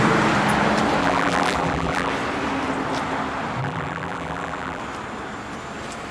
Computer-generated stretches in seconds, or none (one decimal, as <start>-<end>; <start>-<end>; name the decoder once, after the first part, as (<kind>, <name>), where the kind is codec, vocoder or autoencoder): 1.0-2.1 (vocoder, BigVGAN v2); 3.6-4.8